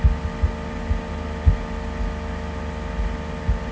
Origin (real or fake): real